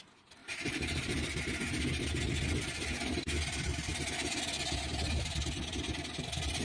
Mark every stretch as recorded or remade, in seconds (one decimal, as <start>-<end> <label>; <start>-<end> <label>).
0.0-0.4 recorded; 0.4-1.4 remade; 1.4-6.6 recorded

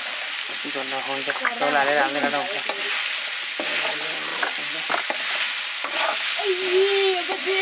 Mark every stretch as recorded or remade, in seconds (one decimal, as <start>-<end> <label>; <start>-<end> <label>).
0.0-7.6 recorded

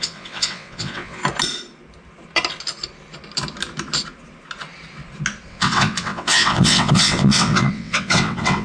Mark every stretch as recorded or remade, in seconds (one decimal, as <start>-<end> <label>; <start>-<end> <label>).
0.0-1.2 remade; 1.2-5.5 recorded; 5.5-8.6 remade

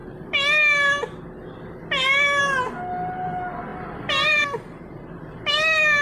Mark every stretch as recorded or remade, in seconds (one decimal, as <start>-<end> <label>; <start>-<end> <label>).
0.0-6.0 recorded

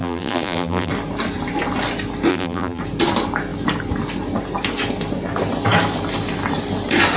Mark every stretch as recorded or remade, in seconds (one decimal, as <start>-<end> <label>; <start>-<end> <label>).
0.0-0.9 remade; 0.9-2.3 recorded; 2.3-2.8 remade; 2.8-7.2 recorded

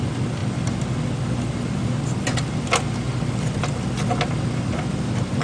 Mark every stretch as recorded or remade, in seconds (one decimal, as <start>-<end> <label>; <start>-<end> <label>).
0.0-5.4 recorded